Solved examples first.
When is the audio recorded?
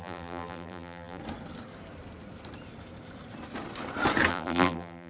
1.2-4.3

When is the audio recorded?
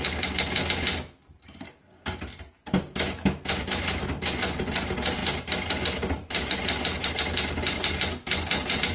0.0-5.2; 7.1-8.9